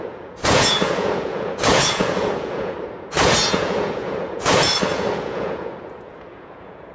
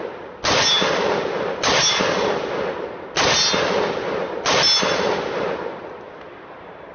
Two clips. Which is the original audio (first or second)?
second